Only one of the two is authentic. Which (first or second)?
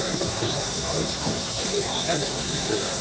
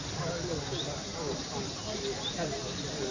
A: second